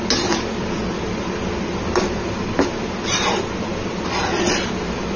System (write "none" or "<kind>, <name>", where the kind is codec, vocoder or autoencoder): none